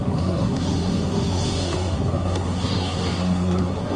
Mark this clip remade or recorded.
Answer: remade